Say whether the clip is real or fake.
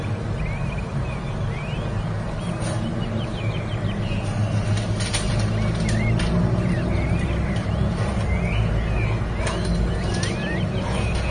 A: real